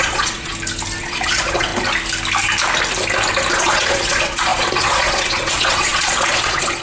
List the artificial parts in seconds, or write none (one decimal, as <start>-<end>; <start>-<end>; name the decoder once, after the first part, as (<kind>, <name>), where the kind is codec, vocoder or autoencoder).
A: 0.0-0.5 (vocoder, Vocos); 1.0-1.7; 3.5-6.8